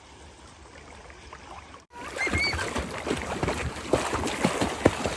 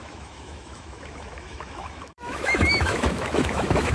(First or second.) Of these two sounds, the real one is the first